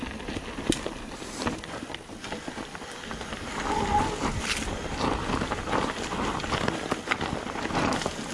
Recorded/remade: recorded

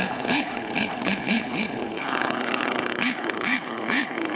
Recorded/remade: remade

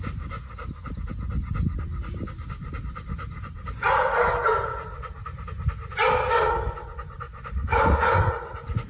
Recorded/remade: recorded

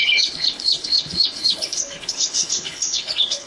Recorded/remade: remade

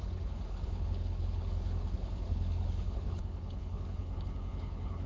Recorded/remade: remade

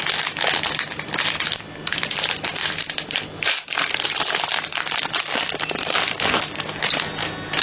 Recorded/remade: recorded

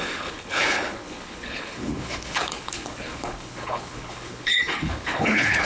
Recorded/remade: remade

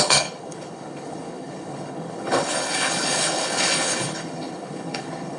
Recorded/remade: remade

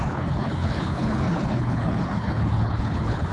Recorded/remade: remade